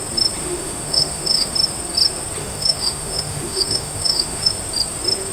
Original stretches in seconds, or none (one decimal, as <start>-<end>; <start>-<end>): 0.0-0.4; 1.5-2.4; 4.5-5.3